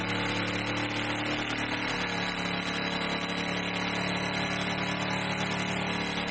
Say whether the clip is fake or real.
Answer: real